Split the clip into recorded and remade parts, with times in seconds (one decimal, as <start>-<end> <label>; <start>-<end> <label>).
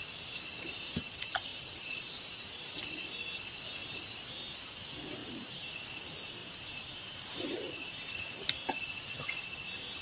0.0-1.5 recorded; 1.5-2.8 remade; 2.8-5.2 recorded; 5.2-5.7 remade; 5.7-6.4 recorded; 6.4-7.7 remade; 7.7-10.0 recorded